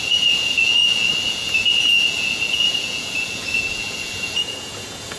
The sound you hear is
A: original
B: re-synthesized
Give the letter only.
B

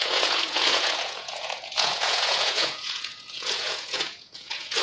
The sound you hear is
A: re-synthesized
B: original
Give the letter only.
A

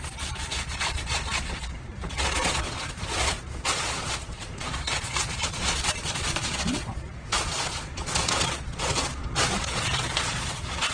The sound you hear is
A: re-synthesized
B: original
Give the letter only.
A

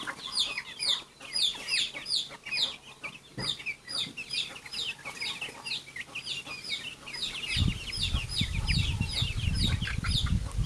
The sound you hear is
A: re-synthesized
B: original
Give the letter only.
B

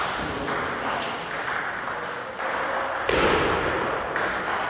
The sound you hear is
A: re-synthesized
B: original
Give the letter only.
B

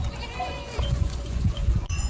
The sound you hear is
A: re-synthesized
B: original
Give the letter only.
A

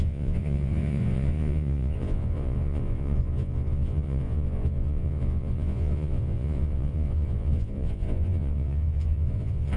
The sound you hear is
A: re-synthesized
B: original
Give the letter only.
A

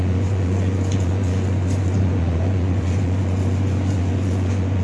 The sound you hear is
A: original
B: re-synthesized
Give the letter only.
B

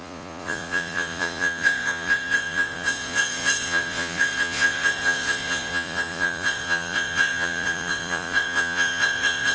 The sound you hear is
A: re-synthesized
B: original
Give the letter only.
A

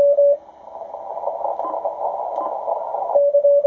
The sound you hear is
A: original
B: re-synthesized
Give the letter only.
A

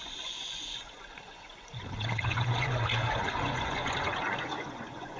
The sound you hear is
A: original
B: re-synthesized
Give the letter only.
B